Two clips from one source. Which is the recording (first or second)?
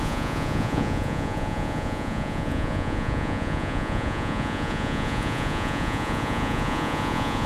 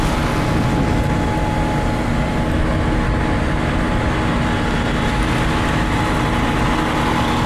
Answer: second